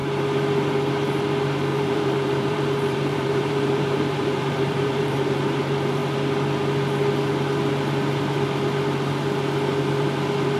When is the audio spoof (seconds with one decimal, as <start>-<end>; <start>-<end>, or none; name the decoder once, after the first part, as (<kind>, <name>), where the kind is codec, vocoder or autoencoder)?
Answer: 1.7-5.4 (vocoder, BigVGAN v2)